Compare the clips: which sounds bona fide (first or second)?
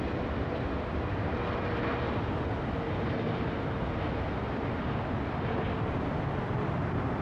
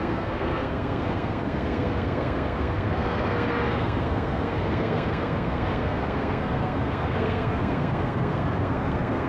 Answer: first